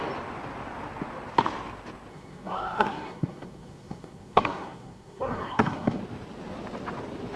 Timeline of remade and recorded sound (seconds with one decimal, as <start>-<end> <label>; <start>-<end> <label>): 0.0-2.1 recorded; 2.1-6.0 remade; 6.0-7.4 recorded